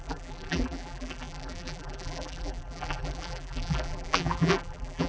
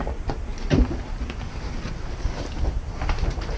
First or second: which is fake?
first